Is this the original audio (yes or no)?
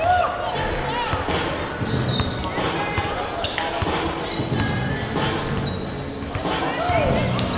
yes